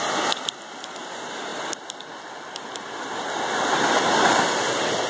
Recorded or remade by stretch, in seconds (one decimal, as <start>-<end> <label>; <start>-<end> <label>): 0.0-5.1 recorded